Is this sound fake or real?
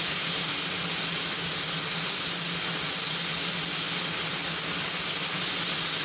real